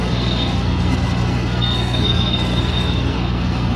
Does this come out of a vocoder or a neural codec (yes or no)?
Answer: yes